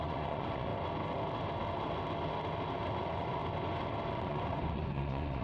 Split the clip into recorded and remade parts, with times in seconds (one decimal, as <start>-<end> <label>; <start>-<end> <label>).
0.0-0.7 remade; 0.7-2.9 recorded; 2.9-3.4 remade; 3.4-4.1 recorded; 4.1-5.4 remade